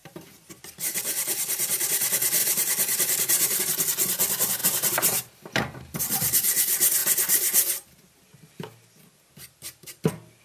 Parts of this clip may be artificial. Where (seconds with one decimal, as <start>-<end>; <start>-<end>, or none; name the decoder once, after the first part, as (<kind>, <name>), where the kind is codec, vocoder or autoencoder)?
0.0-0.9 (vocoder, BigVGAN v2); 2.4-3.6; 4.6-6.0